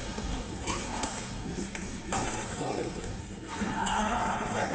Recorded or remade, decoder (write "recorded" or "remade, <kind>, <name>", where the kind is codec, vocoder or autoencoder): remade, codec, SNAC